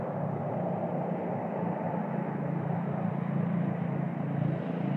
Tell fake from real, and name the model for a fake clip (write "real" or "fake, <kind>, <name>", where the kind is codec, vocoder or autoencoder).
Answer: real